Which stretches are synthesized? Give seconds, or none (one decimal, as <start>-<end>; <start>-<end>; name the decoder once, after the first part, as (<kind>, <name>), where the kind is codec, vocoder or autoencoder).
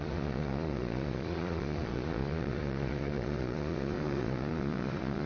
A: 0.0-5.3 (vocoder, Vocos)